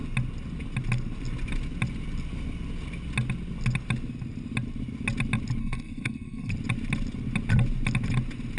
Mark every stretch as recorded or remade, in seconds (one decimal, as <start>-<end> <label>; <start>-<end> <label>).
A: 0.0-5.6 recorded; 5.6-6.5 remade; 6.5-8.6 recorded